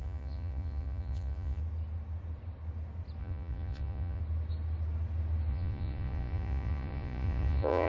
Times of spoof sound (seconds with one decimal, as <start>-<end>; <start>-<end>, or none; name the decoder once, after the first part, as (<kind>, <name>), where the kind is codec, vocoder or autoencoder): 0.0-1.6 (vocoder, Vocos); 3.2-4.2; 5.5-7.9